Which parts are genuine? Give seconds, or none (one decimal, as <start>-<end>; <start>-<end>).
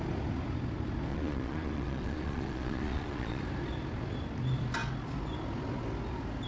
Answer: 0.0-1.1; 3.4-6.5